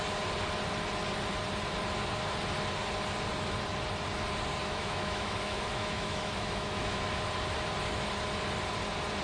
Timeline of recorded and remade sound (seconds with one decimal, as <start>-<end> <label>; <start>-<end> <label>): 0.0-4.6 recorded; 4.6-7.0 remade; 7.0-9.2 recorded